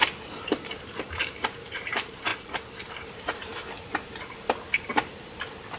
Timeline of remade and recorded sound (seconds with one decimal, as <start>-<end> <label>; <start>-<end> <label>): 0.0-2.3 remade; 2.3-3.0 recorded; 3.0-3.5 remade; 3.5-5.1 recorded; 5.1-5.8 remade